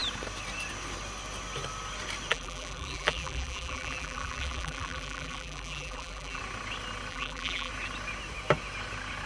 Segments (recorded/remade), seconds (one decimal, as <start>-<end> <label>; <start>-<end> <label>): 0.0-2.3 recorded; 2.3-6.4 remade; 6.4-7.1 recorded; 7.1-7.7 remade; 7.7-9.3 recorded